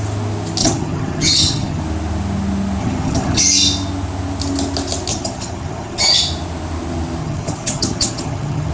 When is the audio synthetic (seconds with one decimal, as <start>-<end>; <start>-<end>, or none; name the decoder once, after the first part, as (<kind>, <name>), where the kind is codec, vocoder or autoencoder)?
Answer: 0.6-1.8 (vocoder, HiFi-GAN); 2.8-3.4; 5.1-6.2; 7.2-8.7